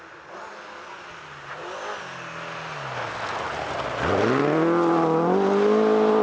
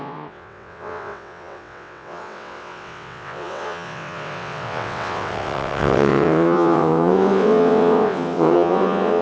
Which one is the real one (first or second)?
first